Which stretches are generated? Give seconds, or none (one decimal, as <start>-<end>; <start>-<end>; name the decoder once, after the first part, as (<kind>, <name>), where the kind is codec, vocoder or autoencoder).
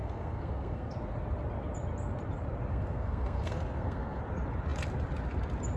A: 0.0-0.9 (codec, SNAC); 2.7-4.2